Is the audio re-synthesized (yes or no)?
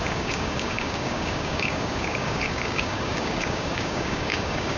yes